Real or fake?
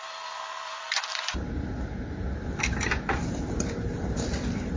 fake